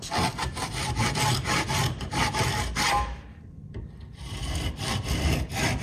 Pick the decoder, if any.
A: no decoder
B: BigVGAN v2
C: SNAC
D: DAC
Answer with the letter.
B